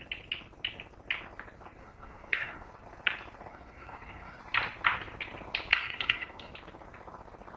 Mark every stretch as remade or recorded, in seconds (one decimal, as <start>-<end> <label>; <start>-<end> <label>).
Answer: 0.0-1.8 recorded; 1.8-2.7 remade; 2.7-3.5 recorded; 3.5-4.4 remade; 4.4-5.7 recorded; 5.7-6.5 remade; 6.5-7.6 recorded